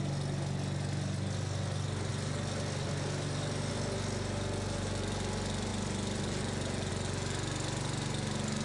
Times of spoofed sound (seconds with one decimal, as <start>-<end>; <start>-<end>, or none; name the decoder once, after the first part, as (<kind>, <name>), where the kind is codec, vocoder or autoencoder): none